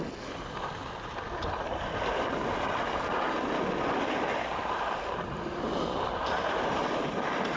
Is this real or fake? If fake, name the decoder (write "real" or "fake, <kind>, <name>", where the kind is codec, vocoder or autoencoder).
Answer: real